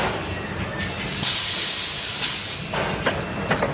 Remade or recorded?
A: recorded